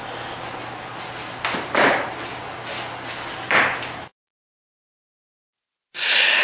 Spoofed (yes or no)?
no